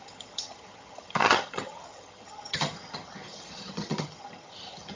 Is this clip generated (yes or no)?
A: yes